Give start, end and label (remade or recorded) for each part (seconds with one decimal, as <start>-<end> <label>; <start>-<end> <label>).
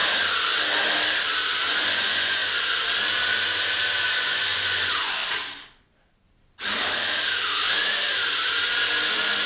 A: 0.0-1.7 recorded; 1.7-2.4 remade; 2.4-4.0 recorded; 4.0-5.2 remade; 5.2-9.5 recorded